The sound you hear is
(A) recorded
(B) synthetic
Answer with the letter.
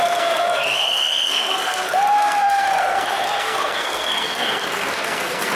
B